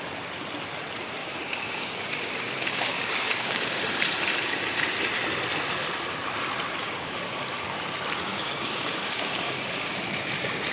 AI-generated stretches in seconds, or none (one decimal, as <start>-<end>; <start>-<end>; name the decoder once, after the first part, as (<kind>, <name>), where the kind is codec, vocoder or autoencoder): 1.2-3.8 (codec, DAC); 6.8-7.3; 8.3-10.0